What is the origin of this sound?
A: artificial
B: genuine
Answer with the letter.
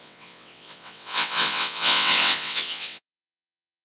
A